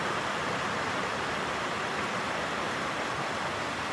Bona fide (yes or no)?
yes